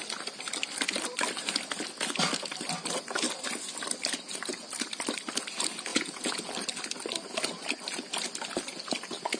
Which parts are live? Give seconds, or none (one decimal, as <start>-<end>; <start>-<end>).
0.0-5.9; 6.5-9.4